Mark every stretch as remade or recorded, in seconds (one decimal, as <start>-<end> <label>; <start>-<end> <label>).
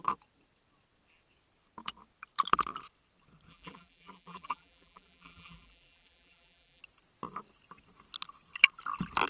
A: 0.0-3.5 recorded; 3.5-6.8 remade; 6.8-9.3 recorded